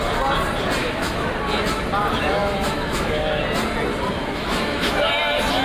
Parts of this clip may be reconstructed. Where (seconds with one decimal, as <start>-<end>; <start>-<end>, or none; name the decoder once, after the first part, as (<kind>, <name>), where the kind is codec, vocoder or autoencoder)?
0.8-1.3 (autoencoder, DAC-VAE); 2.4-3.4; 4.2-5.1